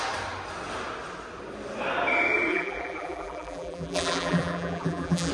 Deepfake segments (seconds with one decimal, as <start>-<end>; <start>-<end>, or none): 2.5-5.3